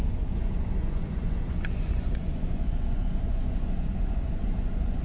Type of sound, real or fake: fake